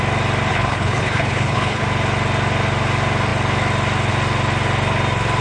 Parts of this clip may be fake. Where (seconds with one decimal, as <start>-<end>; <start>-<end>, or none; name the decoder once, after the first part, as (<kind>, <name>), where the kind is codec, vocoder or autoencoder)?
0.5-1.8 (codec, HILCodec)